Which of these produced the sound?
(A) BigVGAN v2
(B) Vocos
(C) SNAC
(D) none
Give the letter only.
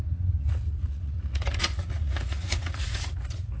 B